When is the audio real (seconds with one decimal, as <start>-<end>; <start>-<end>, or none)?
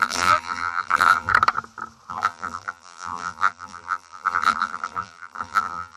1.3-2.1